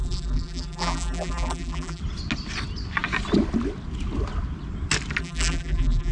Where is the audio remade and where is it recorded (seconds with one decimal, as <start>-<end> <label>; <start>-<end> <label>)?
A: 0.0-2.0 remade; 2.0-5.2 recorded; 5.2-6.1 remade